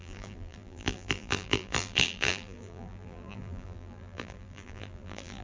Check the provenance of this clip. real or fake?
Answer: fake